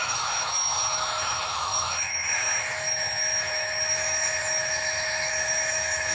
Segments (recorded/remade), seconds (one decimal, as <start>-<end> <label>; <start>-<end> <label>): 0.0-6.1 remade